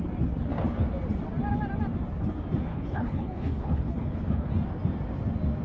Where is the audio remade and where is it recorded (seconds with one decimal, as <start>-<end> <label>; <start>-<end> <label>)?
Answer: 0.0-2.7 recorded; 2.7-4.5 remade; 4.5-5.6 recorded